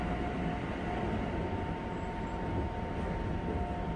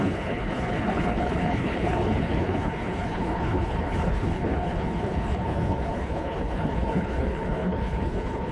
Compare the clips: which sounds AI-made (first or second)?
second